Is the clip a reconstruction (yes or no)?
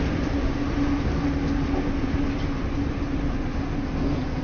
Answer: no